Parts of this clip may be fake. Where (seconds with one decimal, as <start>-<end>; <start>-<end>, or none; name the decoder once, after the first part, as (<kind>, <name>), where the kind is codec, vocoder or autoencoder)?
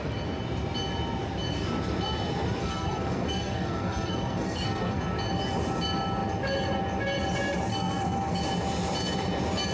2.6-5.0 (codec, SNAC); 7.7-8.4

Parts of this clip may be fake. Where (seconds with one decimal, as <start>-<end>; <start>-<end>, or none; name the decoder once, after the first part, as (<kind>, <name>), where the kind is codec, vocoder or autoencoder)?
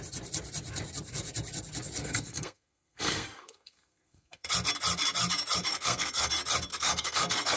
2.0-4.5 (codec, SNAC); 5.7-6.3; 6.7-7.6